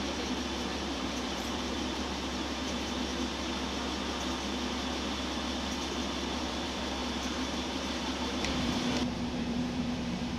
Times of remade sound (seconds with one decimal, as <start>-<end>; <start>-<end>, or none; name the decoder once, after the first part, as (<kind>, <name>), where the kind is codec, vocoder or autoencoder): 0.0-3.1 (vocoder, BigVGAN v2); 6.4-10.4